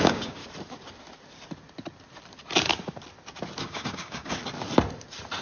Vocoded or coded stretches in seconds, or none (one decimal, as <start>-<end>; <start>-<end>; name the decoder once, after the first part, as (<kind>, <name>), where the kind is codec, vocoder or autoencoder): 0.0-0.4 (codec, DAC); 3.6-4.4